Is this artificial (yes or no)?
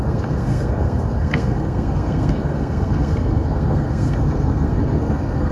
yes